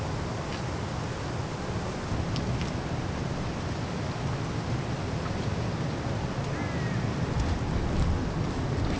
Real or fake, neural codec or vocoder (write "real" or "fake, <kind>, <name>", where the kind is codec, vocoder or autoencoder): real